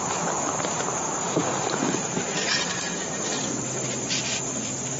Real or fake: fake